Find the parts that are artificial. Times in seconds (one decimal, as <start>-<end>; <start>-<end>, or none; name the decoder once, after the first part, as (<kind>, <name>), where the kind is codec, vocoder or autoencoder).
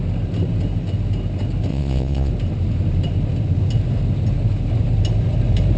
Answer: 1.7-2.3 (vocoder, Vocos)